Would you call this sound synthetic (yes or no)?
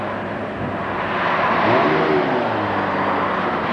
no